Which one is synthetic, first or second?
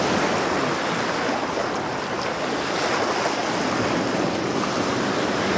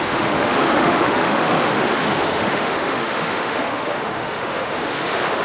second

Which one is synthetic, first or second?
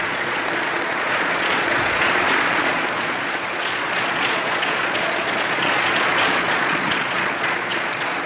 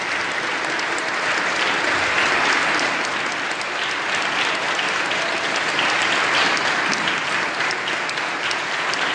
first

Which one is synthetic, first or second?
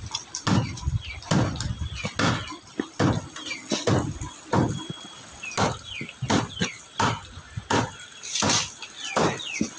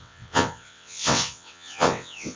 second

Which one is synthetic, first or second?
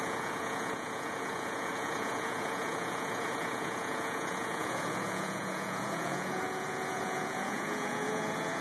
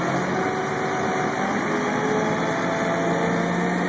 first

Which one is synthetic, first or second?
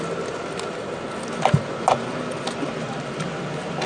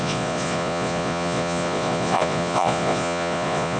second